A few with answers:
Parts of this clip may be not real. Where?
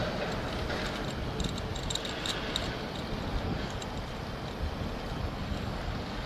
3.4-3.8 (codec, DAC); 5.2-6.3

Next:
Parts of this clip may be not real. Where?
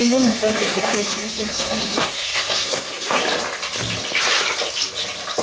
0.0-3.2 (codec, SNAC)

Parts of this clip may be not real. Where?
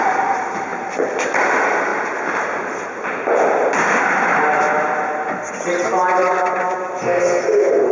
7.0-7.9 (codec, SNAC)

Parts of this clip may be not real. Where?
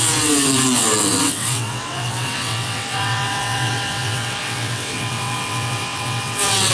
0.0-6.7 (vocoder, WaveNeXt)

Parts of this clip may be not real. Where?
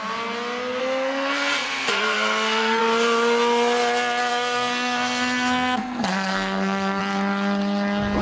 0.8-2.8 (codec, SNAC); 4.3-7.0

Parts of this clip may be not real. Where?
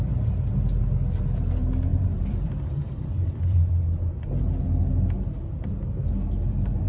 1.9-4.1 (vocoder, BigVGAN v2)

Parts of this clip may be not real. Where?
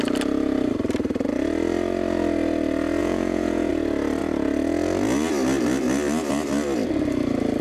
3.0-3.7 (vocoder, Vocos)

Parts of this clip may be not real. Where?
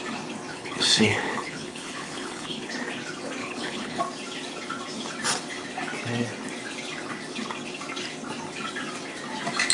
0.5-2.7 (codec, HILCodec); 3.4-4.0